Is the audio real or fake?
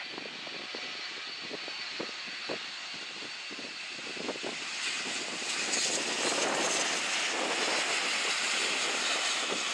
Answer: real